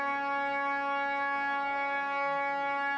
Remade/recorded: recorded